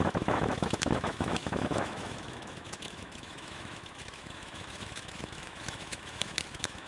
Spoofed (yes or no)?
yes